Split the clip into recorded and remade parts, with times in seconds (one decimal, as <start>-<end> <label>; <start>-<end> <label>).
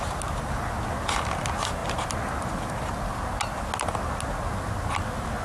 0.0-5.4 recorded